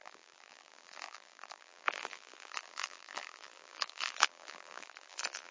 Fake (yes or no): yes